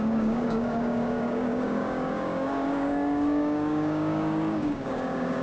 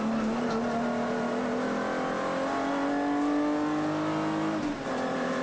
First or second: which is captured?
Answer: second